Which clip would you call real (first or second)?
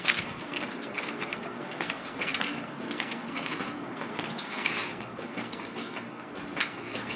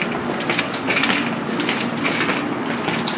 second